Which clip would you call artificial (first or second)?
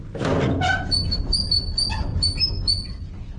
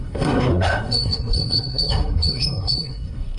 second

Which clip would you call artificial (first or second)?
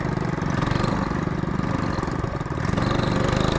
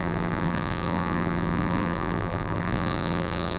second